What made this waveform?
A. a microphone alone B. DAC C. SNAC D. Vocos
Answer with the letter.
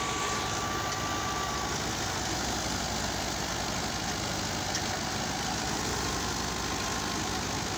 A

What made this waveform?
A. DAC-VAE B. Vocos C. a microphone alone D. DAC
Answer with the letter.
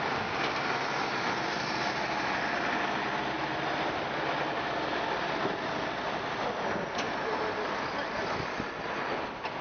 C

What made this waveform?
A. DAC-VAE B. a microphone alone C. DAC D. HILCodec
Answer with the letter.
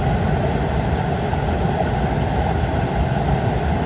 B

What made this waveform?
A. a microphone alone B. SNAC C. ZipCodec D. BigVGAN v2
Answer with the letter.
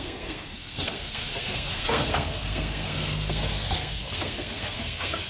B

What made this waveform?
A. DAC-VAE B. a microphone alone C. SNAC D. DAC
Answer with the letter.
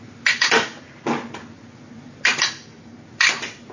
B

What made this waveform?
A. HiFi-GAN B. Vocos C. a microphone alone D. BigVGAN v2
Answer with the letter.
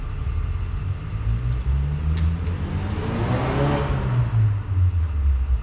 C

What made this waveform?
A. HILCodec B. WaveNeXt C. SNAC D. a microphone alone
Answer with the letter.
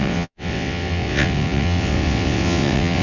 B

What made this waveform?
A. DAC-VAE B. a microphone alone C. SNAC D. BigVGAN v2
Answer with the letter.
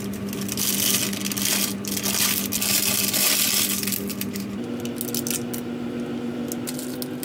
B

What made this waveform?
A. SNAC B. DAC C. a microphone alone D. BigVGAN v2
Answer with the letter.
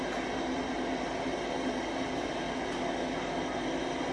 C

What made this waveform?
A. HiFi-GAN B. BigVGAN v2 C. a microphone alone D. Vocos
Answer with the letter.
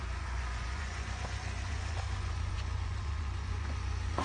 D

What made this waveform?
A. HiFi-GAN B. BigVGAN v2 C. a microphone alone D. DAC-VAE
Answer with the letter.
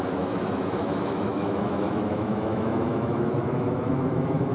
D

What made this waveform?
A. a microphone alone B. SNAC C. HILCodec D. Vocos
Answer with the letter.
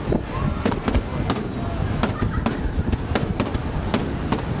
A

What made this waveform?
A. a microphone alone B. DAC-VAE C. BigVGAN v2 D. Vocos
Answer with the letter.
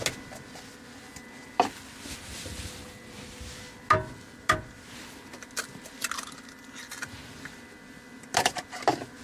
A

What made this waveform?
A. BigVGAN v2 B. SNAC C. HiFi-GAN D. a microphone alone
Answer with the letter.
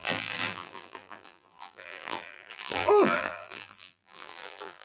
A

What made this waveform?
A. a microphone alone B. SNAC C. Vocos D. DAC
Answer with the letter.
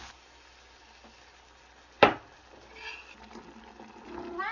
A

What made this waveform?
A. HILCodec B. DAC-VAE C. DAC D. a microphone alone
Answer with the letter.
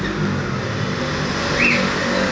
D